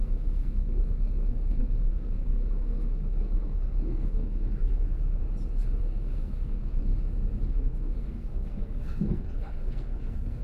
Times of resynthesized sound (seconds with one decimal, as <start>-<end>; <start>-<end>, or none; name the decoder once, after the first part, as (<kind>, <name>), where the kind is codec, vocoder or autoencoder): 0.0-5.2 (codec, SNAC); 5.8-6.9; 7.5-10.4

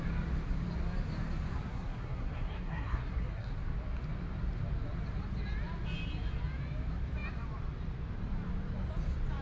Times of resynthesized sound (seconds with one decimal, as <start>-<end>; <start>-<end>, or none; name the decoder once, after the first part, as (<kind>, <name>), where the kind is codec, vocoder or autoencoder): 1.7-3.5 (codec, SNAC)